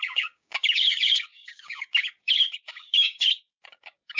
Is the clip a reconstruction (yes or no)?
yes